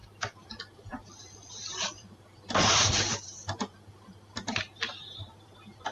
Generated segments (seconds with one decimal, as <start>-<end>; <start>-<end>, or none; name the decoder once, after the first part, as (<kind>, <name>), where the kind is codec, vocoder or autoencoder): 0.0-5.9 (vocoder, BigVGAN v2)